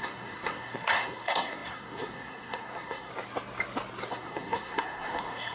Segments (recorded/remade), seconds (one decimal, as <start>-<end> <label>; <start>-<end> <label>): 0.0-3.1 remade; 3.1-4.1 recorded; 4.1-5.5 remade